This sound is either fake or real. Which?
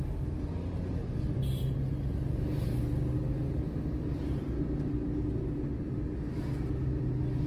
real